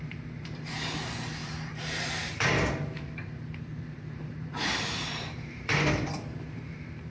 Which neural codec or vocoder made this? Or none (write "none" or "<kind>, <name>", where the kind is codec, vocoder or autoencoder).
vocoder, BigVGAN v2